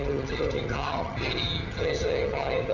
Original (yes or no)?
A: no